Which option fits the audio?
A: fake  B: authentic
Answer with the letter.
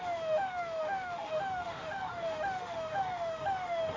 A